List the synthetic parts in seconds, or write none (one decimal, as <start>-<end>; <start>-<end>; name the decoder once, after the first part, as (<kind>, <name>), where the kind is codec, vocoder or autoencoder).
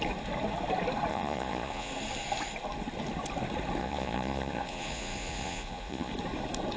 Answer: 1.1-1.9 (vocoder, Vocos); 3.8-6.1